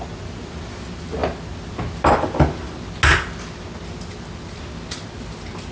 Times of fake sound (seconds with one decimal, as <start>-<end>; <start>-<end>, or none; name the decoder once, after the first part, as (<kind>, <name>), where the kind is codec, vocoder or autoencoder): none